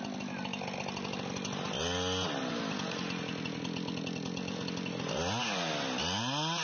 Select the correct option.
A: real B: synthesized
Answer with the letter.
A